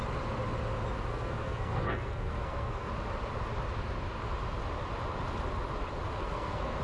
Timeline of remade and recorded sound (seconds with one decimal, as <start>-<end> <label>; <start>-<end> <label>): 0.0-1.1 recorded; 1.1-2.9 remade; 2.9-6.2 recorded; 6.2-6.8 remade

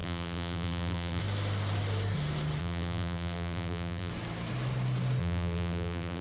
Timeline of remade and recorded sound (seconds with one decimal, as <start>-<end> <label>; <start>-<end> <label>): 0.0-1.2 remade; 1.2-2.6 recorded; 2.6-4.1 remade; 4.1-5.2 recorded; 5.2-6.2 remade

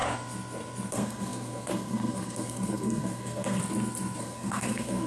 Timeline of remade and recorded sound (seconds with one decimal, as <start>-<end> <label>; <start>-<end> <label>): 0.0-0.9 recorded; 0.9-3.6 remade; 3.6-4.2 recorded; 4.2-5.1 remade

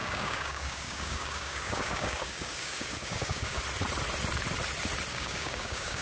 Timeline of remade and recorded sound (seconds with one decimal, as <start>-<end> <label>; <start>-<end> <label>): 0.0-3.6 remade; 3.6-5.1 recorded; 5.1-6.0 remade